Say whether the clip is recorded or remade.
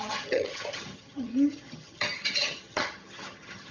remade